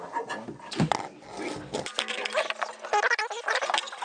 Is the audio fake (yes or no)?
no